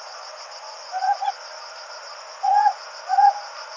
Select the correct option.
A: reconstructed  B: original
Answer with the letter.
A